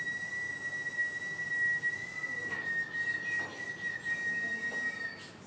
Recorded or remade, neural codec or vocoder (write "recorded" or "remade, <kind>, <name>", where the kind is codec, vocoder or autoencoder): recorded